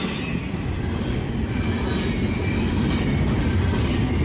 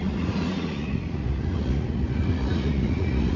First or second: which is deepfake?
second